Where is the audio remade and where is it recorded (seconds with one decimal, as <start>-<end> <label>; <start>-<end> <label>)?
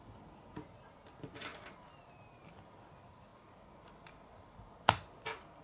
0.0-5.6 recorded